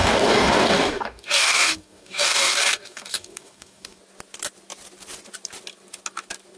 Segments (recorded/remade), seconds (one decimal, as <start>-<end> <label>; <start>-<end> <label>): 0.0-4.0 remade; 4.0-6.6 recorded